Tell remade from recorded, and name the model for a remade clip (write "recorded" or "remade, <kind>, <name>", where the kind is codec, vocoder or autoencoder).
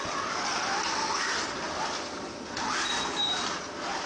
recorded